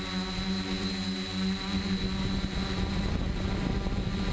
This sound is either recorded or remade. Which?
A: recorded